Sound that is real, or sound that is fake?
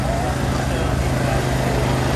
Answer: real